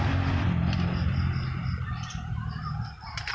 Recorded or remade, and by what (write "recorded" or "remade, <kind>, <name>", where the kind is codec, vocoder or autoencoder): recorded